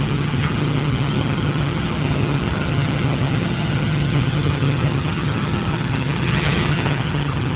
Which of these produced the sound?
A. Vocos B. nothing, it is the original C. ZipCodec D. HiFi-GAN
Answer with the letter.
D